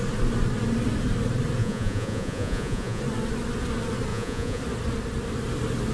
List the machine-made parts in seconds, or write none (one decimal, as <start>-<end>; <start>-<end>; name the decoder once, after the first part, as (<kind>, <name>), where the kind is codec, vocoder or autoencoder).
1.6-3.0 (vocoder, Vocos); 4.1-4.6